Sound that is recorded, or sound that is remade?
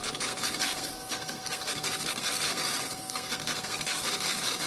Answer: remade